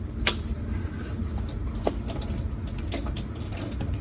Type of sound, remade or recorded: recorded